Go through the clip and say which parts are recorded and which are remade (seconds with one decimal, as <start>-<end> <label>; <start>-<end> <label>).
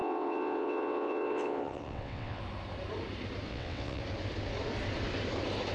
0.0-2.4 remade; 2.4-3.5 recorded; 3.5-4.0 remade; 4.0-5.7 recorded